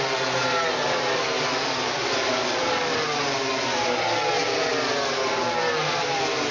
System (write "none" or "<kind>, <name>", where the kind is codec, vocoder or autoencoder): none